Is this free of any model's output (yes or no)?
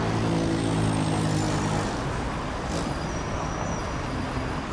yes